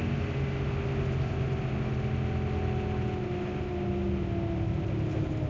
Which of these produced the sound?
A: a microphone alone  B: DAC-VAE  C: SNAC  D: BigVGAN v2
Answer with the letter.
A